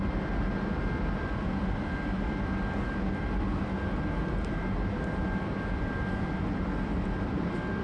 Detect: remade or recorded recorded